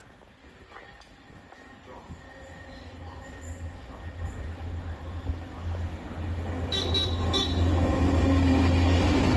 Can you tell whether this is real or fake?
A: real